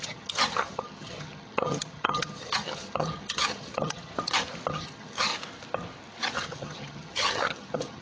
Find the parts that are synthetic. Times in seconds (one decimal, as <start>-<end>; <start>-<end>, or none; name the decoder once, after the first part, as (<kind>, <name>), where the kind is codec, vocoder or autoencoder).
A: 0.0-4.1 (vocoder, HiFi-GAN); 4.7-5.3; 6.3-8.0